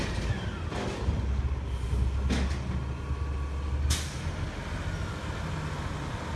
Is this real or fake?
real